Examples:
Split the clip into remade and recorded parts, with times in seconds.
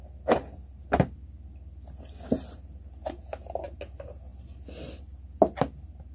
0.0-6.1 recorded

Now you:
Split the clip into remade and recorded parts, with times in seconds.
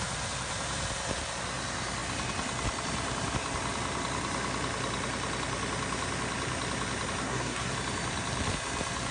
0.0-7.2 recorded; 7.2-7.7 remade; 7.7-9.1 recorded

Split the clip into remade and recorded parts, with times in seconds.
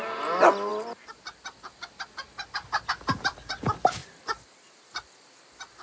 0.0-5.8 recorded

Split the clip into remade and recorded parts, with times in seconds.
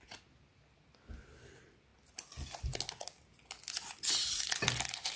0.0-5.2 recorded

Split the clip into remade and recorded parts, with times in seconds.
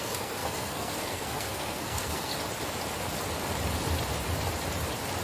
0.0-2.3 remade; 2.3-5.2 recorded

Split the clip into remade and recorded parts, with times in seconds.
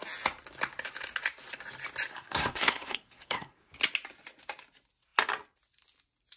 0.0-2.1 recorded; 2.1-3.7 remade; 3.7-6.4 recorded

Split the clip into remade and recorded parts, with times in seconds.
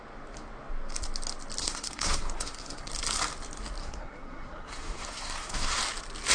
0.0-1.6 recorded; 1.6-2.9 remade; 2.9-3.8 recorded; 3.8-5.8 remade; 5.8-6.3 recorded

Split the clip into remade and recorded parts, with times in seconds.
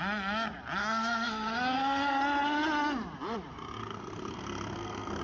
0.0-0.8 recorded; 0.8-2.2 remade; 2.2-3.8 recorded; 3.8-5.2 remade